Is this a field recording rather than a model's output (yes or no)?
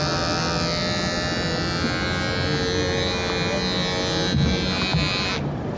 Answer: yes